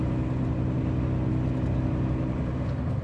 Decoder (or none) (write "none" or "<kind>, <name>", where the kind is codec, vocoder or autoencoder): none